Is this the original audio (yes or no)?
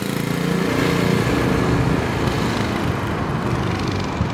yes